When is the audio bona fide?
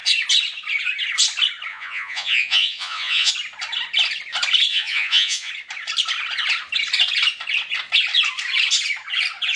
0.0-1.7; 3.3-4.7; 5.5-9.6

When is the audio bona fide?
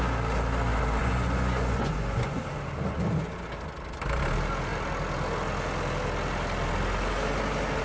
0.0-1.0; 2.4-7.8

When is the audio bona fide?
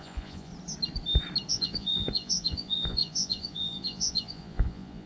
0.5-1.5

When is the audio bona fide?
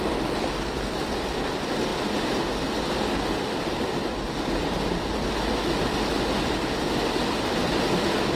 0.0-8.4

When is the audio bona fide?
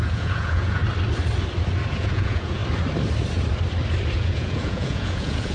0.8-1.9; 2.6-4.1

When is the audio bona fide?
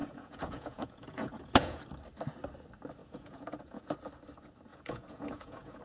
1.8-3.0; 3.8-4.7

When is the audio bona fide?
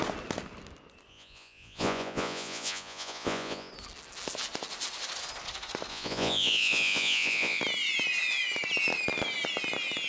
0.0-1.1; 3.7-5.9; 7.6-10.1